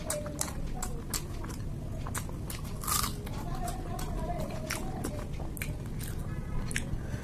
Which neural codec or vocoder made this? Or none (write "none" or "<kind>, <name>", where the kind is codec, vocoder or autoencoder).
none